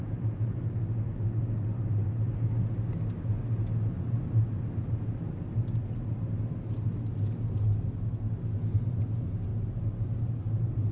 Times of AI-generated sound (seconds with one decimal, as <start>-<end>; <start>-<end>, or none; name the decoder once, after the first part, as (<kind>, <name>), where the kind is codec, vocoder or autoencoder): none